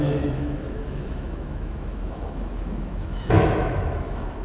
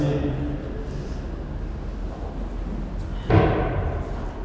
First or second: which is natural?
second